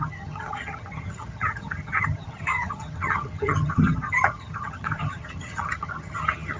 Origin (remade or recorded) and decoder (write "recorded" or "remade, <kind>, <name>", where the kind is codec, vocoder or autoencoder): remade, vocoder, HiFi-GAN